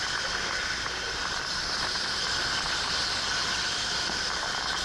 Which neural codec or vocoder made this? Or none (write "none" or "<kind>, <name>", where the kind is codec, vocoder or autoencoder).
none